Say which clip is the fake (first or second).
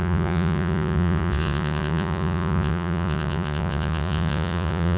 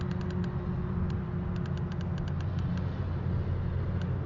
first